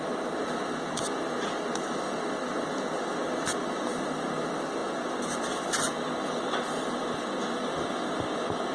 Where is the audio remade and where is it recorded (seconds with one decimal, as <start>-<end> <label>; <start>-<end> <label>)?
0.0-8.7 recorded